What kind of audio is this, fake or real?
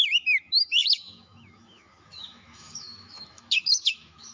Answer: fake